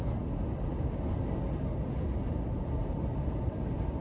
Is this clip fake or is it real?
real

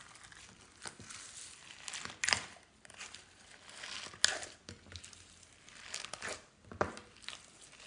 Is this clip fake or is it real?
real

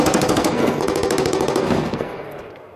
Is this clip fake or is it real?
fake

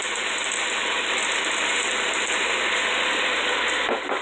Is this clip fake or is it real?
real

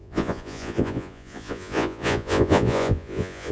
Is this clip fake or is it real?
fake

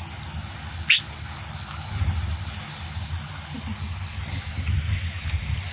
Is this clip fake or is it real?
real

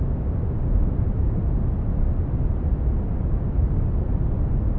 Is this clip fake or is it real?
real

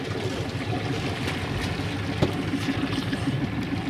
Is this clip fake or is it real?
real